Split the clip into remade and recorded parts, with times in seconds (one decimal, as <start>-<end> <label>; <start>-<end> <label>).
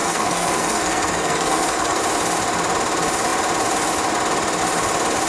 0.0-2.0 remade; 2.0-5.3 recorded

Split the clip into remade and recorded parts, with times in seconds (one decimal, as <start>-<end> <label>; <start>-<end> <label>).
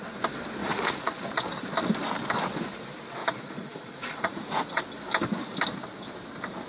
0.0-0.6 recorded; 0.6-1.2 remade; 1.2-3.2 recorded; 3.2-4.8 remade; 4.8-6.7 recorded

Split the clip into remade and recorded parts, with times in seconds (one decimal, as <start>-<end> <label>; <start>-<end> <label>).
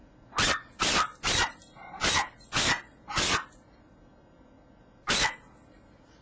0.0-6.2 recorded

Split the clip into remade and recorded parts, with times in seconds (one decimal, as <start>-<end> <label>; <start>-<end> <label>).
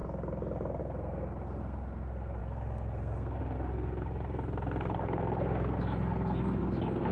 0.0-0.8 recorded; 0.8-7.1 remade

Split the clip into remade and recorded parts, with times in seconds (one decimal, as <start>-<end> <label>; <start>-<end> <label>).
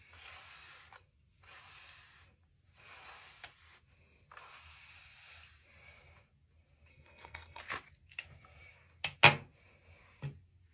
0.0-6.9 recorded; 6.9-7.6 remade; 7.6-10.7 recorded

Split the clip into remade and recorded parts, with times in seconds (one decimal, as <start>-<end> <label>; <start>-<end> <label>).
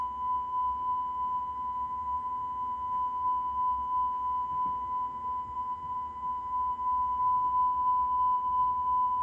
0.0-9.2 recorded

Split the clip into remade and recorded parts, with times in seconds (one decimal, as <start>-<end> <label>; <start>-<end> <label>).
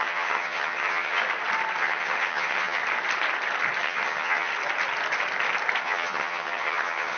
0.0-1.2 remade; 1.2-1.8 recorded; 1.8-2.8 remade; 2.8-3.8 recorded; 3.8-4.5 remade; 4.5-5.8 recorded; 5.8-7.2 remade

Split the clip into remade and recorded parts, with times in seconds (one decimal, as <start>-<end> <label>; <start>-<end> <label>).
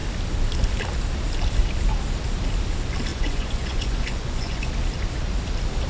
0.0-3.1 recorded; 3.1-4.7 remade; 4.7-5.9 recorded